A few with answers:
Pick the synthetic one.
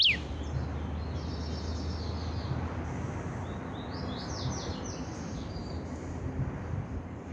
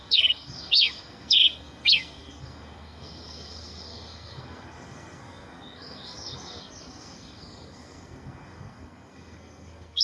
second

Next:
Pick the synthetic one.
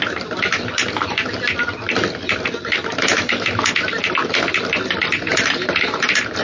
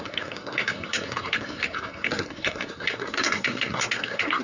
second